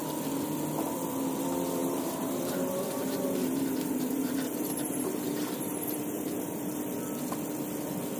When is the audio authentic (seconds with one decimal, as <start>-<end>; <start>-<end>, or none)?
0.0-1.8; 6.7-8.2